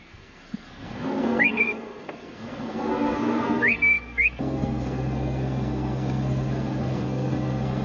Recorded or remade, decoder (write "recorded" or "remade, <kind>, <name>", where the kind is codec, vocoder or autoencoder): remade, codec, SNAC